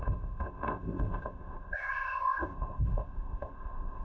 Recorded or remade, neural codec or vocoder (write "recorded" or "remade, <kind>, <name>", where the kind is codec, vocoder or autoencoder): remade, codec, ZipCodec